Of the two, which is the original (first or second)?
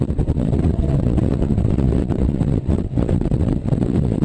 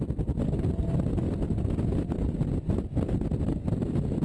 second